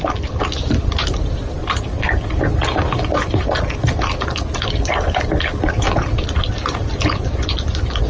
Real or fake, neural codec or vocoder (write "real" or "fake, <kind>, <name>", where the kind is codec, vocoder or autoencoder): real